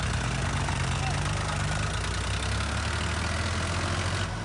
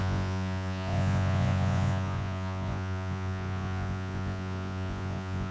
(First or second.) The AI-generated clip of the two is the second